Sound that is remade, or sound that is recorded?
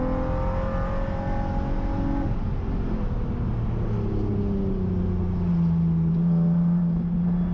recorded